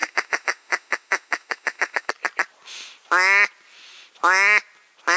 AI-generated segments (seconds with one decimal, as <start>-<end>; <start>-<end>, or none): 0.0-2.1